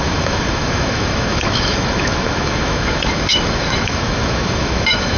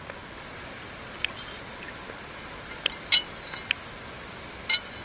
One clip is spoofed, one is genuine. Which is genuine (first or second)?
second